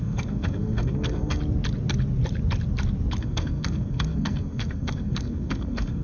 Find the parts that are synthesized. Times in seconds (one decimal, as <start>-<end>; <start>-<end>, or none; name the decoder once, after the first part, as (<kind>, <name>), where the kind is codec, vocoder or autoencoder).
0.0-1.4 (codec, SNAC); 3.2-6.0